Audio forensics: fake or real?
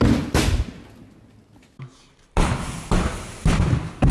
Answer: real